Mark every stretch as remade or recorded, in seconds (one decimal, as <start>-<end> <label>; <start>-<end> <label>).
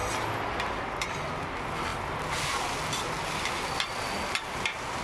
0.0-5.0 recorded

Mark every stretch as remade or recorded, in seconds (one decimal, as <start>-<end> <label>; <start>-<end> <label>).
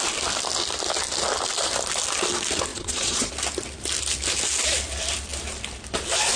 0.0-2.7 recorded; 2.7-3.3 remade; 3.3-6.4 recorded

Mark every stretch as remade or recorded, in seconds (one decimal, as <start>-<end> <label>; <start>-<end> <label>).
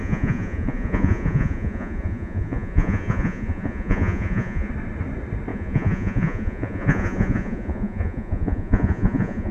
0.0-4.7 remade; 4.7-5.5 recorded; 5.5-9.5 remade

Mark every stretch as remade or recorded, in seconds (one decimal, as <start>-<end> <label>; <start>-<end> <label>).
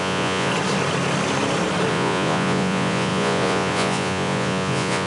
0.0-0.5 remade; 0.5-1.9 recorded; 1.9-5.1 remade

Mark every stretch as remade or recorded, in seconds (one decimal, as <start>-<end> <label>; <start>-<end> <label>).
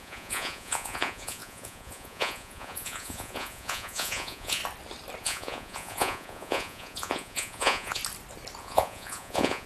0.0-4.6 remade; 4.6-5.2 recorded; 5.2-8.0 remade; 8.0-8.6 recorded; 8.6-9.7 remade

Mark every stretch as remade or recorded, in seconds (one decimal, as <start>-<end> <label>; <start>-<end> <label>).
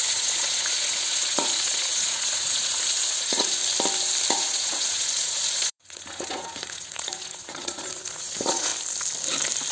0.0-3.6 remade; 3.6-4.3 recorded; 4.3-8.7 remade; 8.7-9.7 recorded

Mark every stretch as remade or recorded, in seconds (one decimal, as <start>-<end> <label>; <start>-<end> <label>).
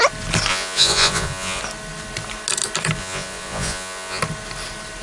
0.0-0.5 recorded; 0.5-1.6 remade; 1.6-3.0 recorded; 3.0-4.2 remade; 4.2-5.0 recorded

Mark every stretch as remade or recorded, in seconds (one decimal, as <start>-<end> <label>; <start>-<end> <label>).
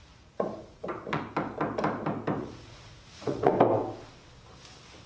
0.0-1.2 remade; 1.2-2.4 recorded; 2.4-3.5 remade; 3.5-5.1 recorded